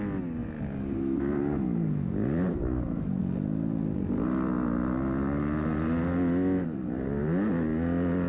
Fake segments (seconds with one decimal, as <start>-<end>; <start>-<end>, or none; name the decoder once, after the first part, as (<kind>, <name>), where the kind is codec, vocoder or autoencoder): none